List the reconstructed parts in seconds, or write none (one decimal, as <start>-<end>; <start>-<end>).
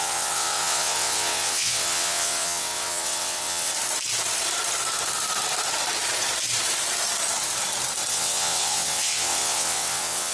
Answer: 0.0-3.7; 8.1-10.3